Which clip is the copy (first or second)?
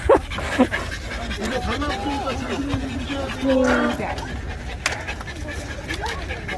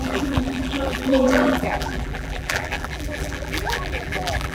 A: second